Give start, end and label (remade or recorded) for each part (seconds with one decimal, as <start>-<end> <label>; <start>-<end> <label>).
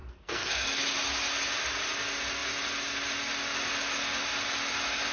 0.0-0.8 remade; 0.8-5.1 recorded